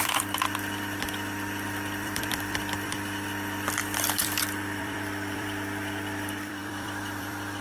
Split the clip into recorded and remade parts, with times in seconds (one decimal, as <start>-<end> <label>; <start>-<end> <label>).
0.0-7.6 remade